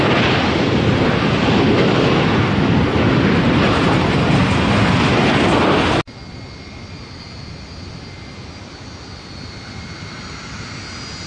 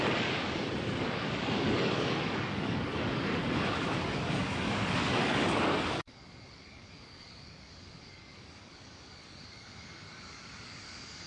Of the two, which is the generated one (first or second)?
second